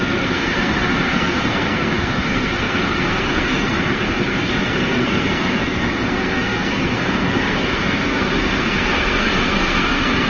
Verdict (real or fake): fake